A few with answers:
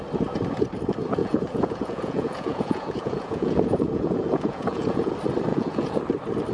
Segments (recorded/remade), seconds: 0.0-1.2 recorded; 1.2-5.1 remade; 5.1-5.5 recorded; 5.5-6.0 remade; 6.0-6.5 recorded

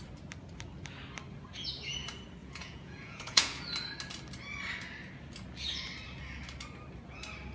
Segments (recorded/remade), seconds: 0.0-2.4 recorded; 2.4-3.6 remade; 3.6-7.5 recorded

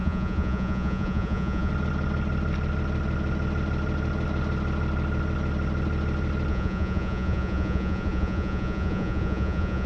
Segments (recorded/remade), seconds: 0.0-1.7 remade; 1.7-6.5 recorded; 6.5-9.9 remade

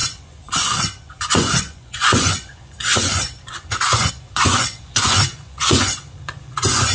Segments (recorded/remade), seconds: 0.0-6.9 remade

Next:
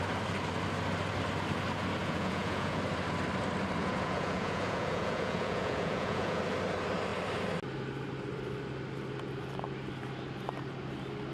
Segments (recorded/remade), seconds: 0.0-2.0 recorded; 2.0-2.8 remade; 2.8-3.8 recorded; 3.8-6.4 remade; 6.4-11.3 recorded